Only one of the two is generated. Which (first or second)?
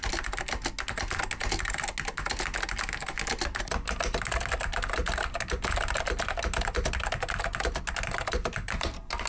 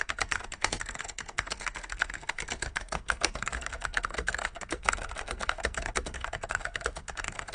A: second